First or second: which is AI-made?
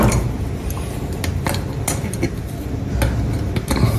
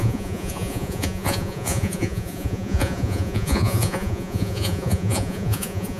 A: second